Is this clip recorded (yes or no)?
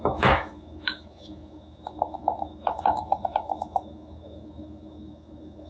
no